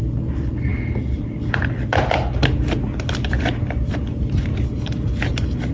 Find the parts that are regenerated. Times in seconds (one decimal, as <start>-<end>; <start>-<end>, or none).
0.0-0.7; 4.1-4.5; 5.3-5.7